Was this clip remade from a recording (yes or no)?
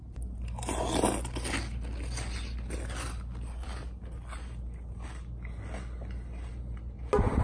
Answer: no